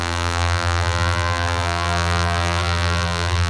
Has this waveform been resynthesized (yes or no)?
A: yes